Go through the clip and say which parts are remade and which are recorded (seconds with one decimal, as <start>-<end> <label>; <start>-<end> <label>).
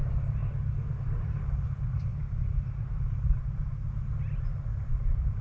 0.0-0.4 remade; 0.4-0.9 recorded; 0.9-3.6 remade; 3.6-4.6 recorded; 4.6-5.4 remade